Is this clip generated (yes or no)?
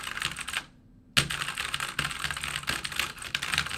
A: no